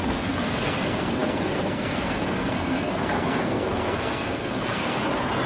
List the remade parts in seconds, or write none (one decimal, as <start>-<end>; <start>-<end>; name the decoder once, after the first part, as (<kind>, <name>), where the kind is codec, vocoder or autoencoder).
0.0-5.0 (codec, SNAC)